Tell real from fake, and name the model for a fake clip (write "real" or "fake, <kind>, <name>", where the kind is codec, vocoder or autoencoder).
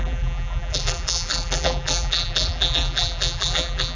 fake, vocoder, BigVGAN v2